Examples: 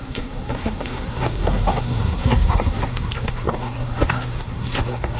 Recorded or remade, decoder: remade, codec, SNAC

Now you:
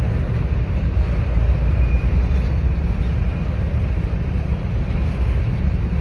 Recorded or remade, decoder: recorded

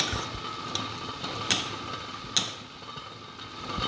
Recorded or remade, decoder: recorded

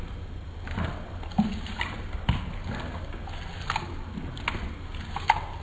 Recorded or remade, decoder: recorded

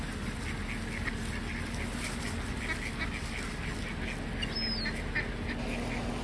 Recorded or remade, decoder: recorded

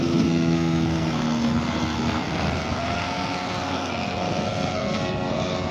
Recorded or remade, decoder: remade, codec, SNAC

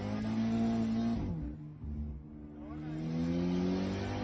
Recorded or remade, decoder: recorded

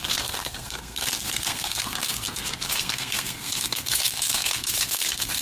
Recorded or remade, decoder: remade, codec, SNAC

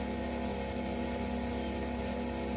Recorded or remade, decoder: recorded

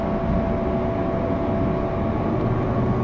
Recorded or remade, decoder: recorded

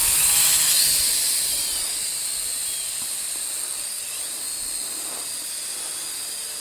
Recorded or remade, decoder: recorded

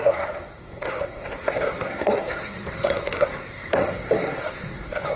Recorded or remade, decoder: remade, codec, SNAC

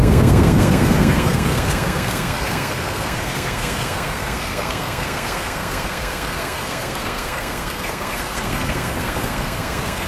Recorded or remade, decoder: remade, codec, SNAC